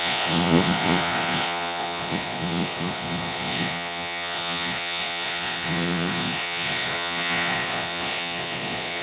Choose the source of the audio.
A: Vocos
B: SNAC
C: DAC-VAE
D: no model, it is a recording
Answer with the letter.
A